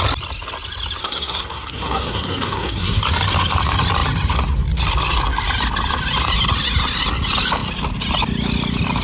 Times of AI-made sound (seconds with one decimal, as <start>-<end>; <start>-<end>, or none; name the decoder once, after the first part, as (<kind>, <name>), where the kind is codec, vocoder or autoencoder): 1.0-3.0 (codec, SNAC)